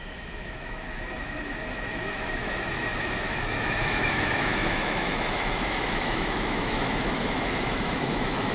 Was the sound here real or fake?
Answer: fake